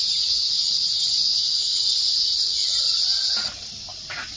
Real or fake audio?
real